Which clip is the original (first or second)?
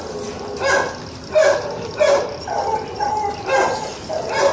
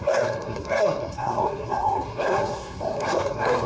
first